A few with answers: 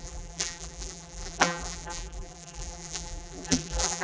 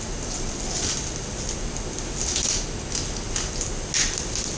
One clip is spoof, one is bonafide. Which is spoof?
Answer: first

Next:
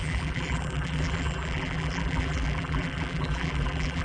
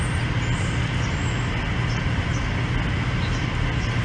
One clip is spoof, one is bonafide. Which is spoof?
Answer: first